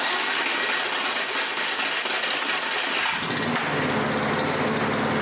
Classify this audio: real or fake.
real